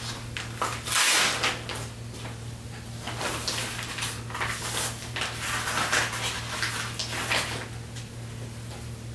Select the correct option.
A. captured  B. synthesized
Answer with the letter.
A